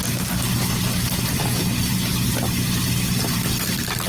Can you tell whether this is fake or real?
real